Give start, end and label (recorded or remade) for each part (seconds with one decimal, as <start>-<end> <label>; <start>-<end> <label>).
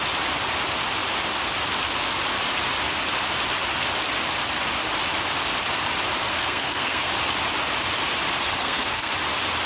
0.0-6.3 recorded; 6.3-7.1 remade; 7.1-8.6 recorded; 8.6-9.1 remade; 9.1-9.7 recorded